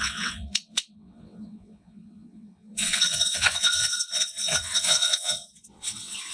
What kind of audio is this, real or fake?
fake